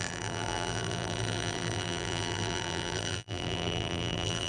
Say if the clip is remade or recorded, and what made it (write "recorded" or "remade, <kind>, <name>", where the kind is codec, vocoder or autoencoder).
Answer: remade, vocoder, BigVGAN v2